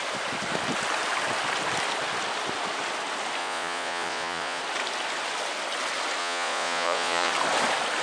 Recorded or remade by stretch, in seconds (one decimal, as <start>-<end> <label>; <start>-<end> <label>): 0.0-3.4 recorded; 3.4-4.6 remade; 4.6-6.2 recorded; 6.2-7.3 remade; 7.3-8.0 recorded